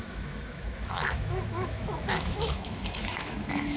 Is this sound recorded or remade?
remade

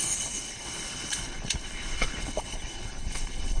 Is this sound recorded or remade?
remade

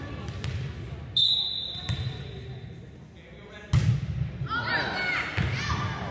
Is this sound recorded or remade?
recorded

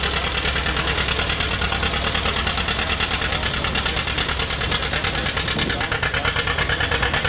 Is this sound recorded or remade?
recorded